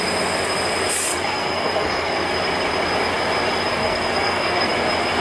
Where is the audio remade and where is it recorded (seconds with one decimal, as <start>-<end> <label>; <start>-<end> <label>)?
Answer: 0.0-1.1 recorded; 1.1-2.3 remade; 2.3-3.8 recorded; 3.8-4.7 remade; 4.7-5.2 recorded